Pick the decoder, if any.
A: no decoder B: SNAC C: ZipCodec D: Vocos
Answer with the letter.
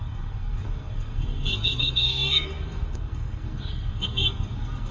B